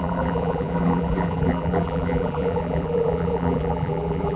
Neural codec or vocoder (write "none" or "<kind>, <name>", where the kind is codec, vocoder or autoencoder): vocoder, BigVGAN v2